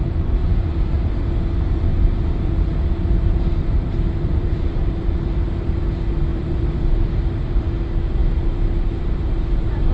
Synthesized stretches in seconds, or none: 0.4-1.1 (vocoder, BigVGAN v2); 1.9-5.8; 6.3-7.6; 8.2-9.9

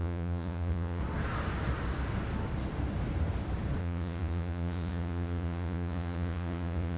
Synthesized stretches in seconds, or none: 0.0-1.0 (vocoder, Vocos); 3.8-7.0

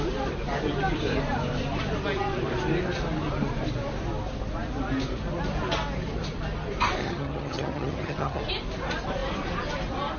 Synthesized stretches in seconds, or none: 7.0-8.4 (vocoder, HiFi-GAN)

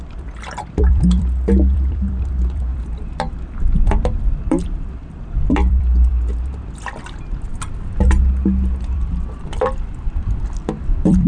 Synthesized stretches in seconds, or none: 0.0-6.1 (vocoder, BigVGAN v2); 7.0-7.5; 8.8-11.3

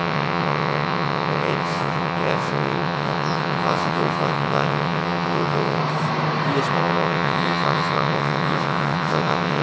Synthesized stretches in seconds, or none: 0.0-5.8 (vocoder, WaveNeXt); 6.7-9.6

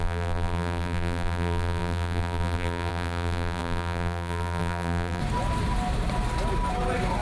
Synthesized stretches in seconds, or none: 0.0-5.2 (vocoder, BigVGAN v2)